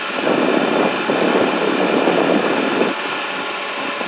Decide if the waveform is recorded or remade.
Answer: recorded